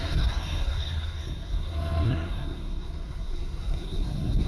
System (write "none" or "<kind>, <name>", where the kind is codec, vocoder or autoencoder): codec, SNAC